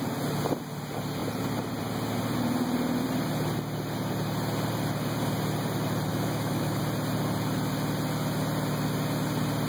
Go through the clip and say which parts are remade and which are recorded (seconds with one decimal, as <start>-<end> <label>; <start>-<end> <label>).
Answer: 0.0-6.1 recorded; 6.1-6.8 remade; 6.8-9.7 recorded